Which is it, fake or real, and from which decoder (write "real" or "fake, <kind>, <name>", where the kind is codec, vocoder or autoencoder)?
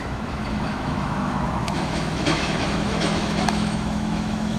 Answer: fake, autoencoder, DAC-VAE